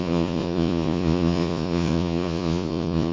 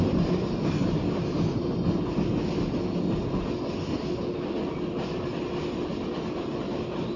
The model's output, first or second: first